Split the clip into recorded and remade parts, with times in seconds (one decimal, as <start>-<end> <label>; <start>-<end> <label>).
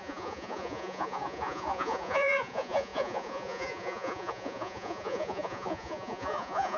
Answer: 0.0-6.8 remade